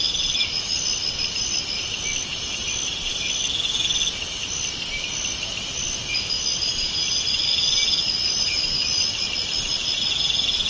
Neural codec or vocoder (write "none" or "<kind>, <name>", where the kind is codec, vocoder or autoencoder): none